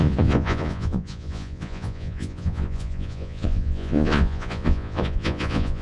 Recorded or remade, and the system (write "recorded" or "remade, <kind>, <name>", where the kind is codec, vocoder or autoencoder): remade, vocoder, Vocos